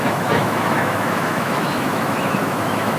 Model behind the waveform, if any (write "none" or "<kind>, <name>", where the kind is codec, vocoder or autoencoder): autoencoder, DAC-VAE